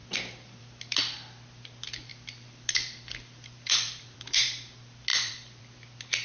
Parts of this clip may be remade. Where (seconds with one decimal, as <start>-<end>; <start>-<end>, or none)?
2.1-4.4; 5.1-5.6